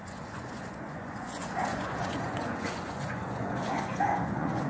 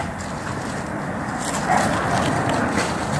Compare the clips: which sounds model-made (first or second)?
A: first